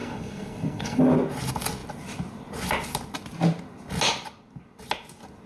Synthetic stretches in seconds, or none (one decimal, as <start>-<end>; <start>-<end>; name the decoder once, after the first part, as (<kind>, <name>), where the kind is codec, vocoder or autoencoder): 0.0-1.0 (codec, SNAC)